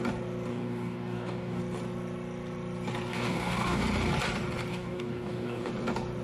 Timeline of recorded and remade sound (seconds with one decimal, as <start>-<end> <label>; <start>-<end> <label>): 0.0-0.5 recorded; 0.5-1.6 remade; 1.6-3.1 recorded; 3.1-3.8 remade; 3.8-4.7 recorded; 4.7-5.7 remade; 5.7-6.2 recorded